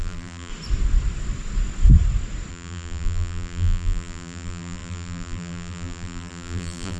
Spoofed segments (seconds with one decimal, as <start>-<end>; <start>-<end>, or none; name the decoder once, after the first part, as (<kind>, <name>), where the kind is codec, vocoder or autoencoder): 0.0-0.5 (vocoder, BigVGAN v2); 2.5-7.0